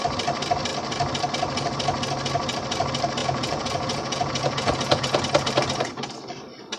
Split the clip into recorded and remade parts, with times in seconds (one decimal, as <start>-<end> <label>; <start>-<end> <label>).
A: 0.0-3.2 recorded; 3.2-5.2 remade; 5.2-6.8 recorded